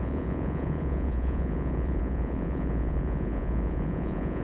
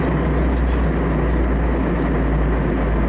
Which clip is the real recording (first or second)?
second